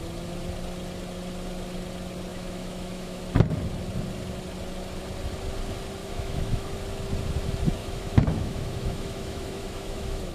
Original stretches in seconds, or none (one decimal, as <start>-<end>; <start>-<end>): 0.0-2.3; 3.2-6.0; 6.7-7.8